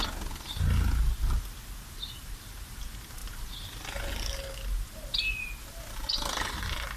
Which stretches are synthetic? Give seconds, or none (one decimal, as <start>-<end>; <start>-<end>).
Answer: none